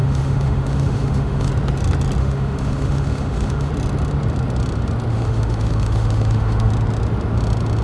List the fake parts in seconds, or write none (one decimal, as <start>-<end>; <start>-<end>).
0.0-1.5; 2.2-3.7; 5.1-6.7